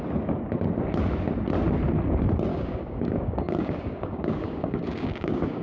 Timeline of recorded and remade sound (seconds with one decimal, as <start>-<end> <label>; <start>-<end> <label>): 0.0-2.5 recorded; 2.5-5.6 remade